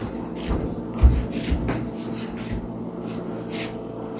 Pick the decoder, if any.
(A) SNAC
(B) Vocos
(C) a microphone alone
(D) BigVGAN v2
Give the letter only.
C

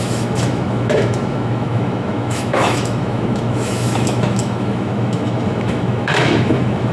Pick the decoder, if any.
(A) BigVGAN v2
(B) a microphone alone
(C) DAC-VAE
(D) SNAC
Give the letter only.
C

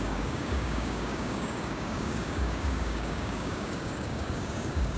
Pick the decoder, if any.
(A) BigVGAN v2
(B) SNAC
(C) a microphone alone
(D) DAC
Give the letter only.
D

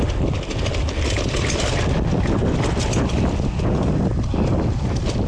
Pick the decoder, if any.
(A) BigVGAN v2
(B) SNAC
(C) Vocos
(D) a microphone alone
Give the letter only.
D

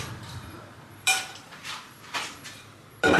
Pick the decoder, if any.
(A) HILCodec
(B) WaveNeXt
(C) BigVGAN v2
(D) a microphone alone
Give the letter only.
C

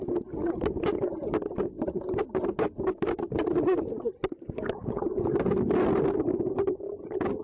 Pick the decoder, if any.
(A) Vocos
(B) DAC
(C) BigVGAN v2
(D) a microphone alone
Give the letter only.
D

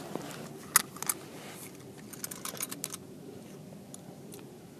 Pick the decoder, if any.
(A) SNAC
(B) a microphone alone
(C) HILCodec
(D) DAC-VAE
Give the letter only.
B